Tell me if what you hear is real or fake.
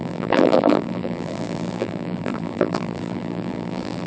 fake